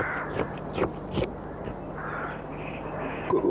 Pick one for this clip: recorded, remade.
recorded